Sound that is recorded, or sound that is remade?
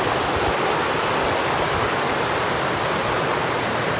recorded